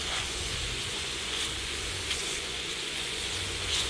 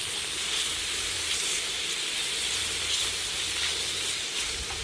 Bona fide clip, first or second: second